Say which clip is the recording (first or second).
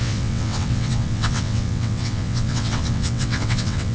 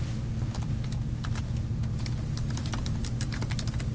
second